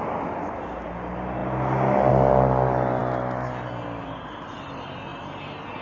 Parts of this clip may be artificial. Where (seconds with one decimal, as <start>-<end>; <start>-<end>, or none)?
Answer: none